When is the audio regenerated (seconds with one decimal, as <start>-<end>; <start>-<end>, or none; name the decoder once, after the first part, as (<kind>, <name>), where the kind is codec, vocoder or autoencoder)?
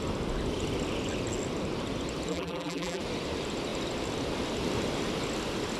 2.3-3.0 (vocoder, BigVGAN v2)